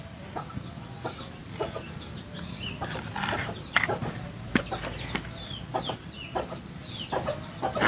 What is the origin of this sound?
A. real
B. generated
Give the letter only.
A